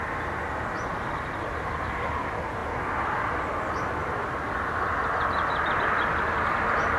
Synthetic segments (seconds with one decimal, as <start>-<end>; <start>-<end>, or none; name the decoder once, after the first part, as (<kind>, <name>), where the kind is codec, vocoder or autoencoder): 0.9-2.1 (vocoder, BigVGAN v2)